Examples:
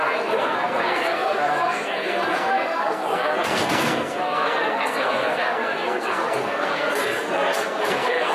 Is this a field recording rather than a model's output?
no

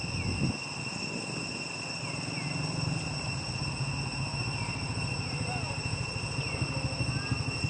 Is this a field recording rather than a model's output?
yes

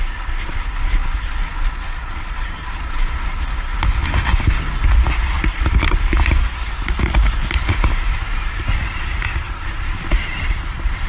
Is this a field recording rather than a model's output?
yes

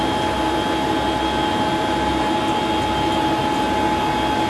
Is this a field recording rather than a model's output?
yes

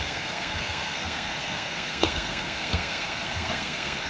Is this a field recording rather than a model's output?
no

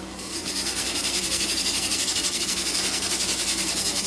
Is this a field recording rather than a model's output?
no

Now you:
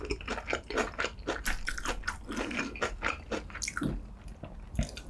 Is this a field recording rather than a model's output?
yes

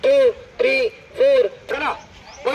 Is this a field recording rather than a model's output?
yes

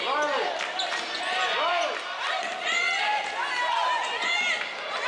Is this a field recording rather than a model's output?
yes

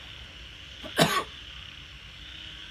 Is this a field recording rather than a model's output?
yes